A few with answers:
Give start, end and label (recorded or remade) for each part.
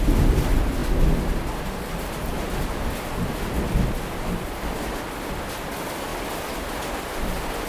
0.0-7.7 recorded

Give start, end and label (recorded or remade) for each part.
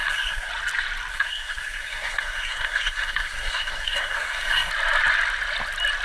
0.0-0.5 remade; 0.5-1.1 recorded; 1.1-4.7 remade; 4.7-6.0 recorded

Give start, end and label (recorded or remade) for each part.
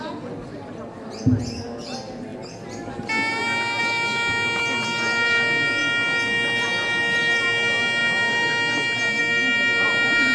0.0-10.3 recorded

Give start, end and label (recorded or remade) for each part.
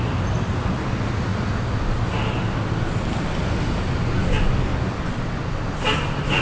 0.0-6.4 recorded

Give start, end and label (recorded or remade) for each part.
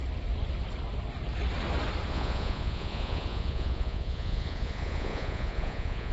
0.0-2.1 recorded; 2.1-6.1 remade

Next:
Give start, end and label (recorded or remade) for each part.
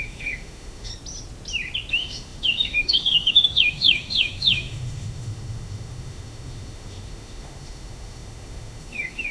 0.0-0.9 remade; 0.9-1.9 recorded; 1.9-9.3 remade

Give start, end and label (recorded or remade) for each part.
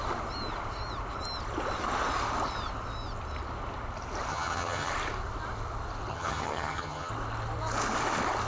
0.0-4.3 recorded; 4.3-4.9 remade; 4.9-6.1 recorded; 6.1-7.1 remade; 7.1-8.5 recorded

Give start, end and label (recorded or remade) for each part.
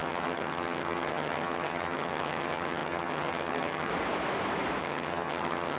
0.0-3.9 remade; 3.9-4.8 recorded; 4.8-5.8 remade